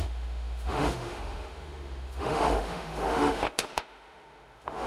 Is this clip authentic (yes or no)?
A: no